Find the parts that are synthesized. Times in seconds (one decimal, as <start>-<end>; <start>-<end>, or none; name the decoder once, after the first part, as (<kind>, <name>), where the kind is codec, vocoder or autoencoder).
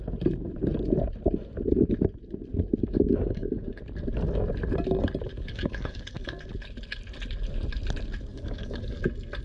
2.8-3.8 (codec, DAC); 5.3-6.4; 8.3-9.0